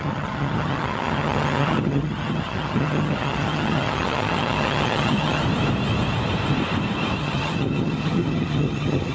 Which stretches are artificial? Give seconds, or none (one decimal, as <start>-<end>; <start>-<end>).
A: 0.0-5.4; 7.2-9.1